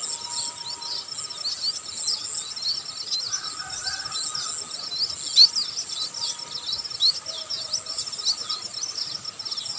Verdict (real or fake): real